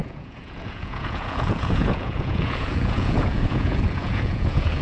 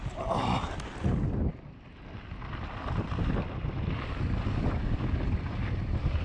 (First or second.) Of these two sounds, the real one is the second